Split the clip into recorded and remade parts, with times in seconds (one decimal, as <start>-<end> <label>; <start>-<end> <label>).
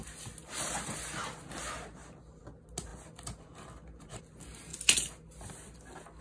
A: 0.0-6.2 recorded